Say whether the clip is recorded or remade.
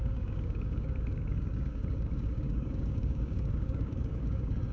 remade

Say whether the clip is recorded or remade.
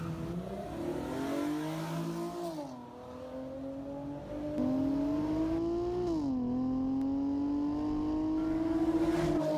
recorded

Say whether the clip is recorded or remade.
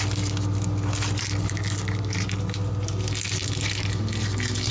recorded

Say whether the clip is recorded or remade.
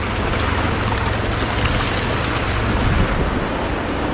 recorded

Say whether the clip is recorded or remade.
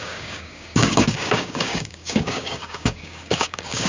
remade